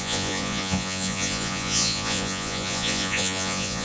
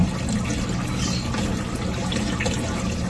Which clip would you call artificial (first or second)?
first